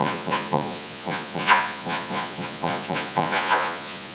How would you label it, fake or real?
fake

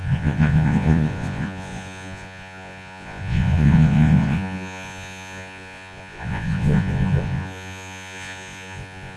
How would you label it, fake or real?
fake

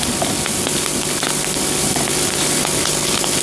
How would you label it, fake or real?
real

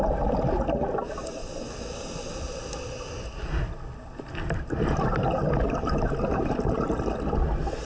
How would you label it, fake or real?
real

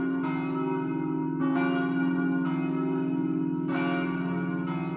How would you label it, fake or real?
real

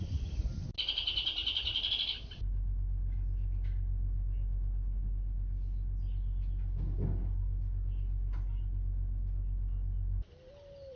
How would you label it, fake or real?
real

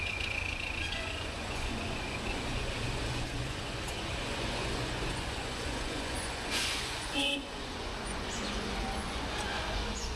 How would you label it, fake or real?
fake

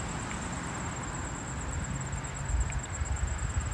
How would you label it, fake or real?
real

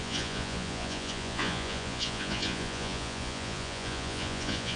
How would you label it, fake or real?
fake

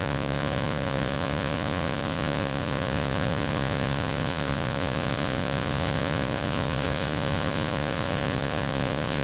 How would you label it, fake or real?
fake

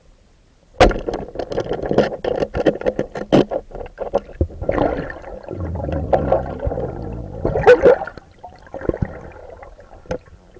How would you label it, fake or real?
real